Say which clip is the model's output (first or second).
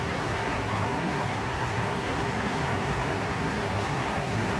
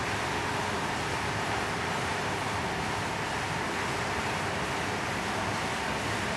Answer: first